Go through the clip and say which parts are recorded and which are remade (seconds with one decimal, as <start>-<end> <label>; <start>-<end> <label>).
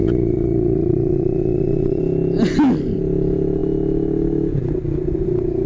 0.0-2.0 remade; 2.0-5.7 recorded